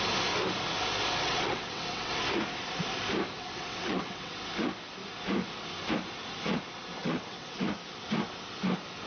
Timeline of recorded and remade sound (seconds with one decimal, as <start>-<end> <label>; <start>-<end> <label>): 0.0-1.2 recorded; 1.2-2.1 remade; 2.1-3.3 recorded; 3.3-4.3 remade; 4.3-7.0 recorded; 7.0-7.6 remade; 7.6-9.1 recorded